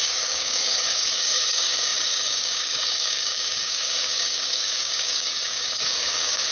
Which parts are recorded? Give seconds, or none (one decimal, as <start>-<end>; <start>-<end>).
none